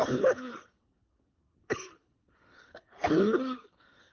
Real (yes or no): no